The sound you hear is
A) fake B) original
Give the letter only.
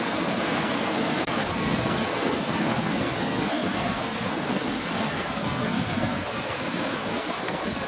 A